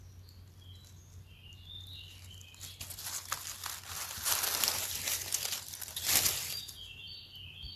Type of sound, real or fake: real